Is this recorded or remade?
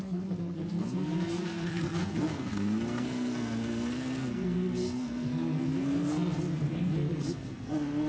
remade